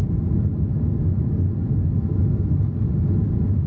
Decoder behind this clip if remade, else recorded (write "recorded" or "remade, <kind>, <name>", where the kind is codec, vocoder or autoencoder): recorded